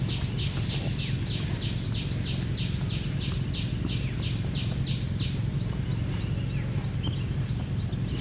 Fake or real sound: real